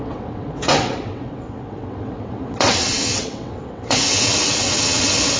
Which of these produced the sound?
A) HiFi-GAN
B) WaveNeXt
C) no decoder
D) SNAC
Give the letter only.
B